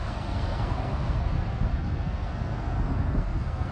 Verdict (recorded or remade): remade